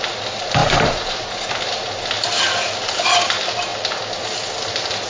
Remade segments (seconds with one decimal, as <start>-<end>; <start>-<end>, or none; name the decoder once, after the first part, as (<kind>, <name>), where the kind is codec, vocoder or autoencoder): 0.6-1.5 (vocoder, BigVGAN v2)